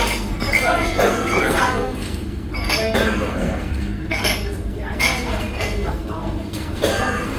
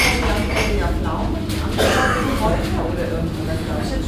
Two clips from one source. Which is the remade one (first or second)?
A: first